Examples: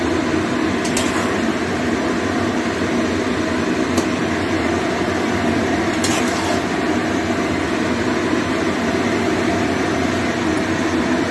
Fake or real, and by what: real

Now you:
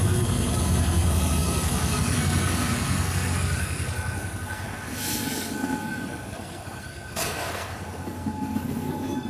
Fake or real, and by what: fake, codec, SNAC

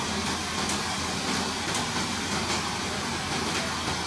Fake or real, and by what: real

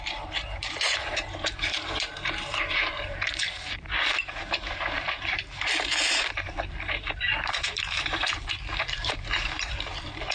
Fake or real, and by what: fake, vocoder, BigVGAN v2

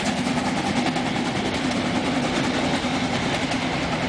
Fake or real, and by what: real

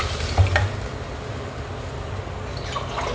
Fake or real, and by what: real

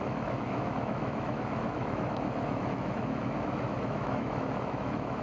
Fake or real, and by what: fake, autoencoder, DAC-VAE